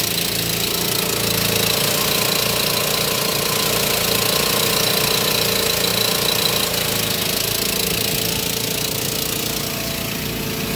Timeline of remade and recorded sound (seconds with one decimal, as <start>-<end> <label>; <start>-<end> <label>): 0.0-10.8 recorded